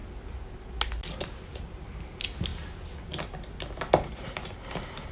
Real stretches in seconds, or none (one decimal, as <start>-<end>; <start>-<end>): 0.0-5.1